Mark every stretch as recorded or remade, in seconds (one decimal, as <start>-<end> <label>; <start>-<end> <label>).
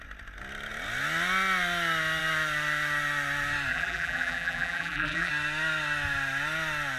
0.0-3.7 recorded; 3.7-5.3 remade; 5.3-7.0 recorded